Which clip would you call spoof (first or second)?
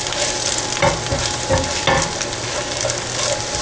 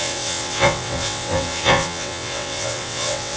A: second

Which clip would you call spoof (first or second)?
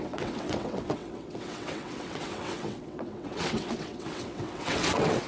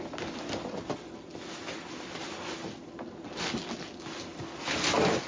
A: first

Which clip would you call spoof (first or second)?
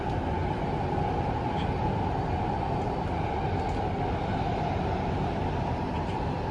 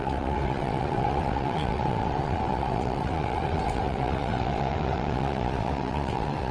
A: second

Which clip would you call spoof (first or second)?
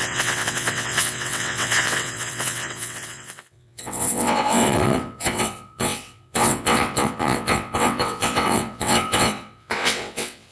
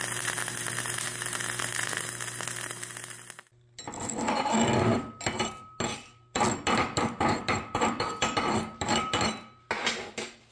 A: first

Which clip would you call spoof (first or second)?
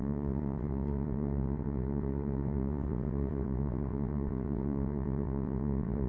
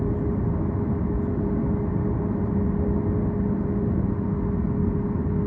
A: first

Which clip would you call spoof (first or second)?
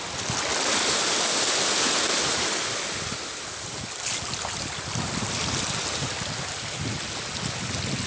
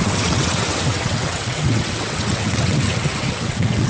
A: second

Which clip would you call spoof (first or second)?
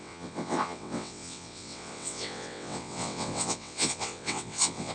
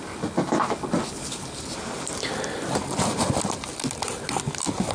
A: first